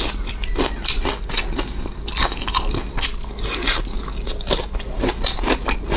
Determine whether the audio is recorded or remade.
recorded